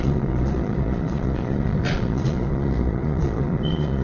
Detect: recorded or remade remade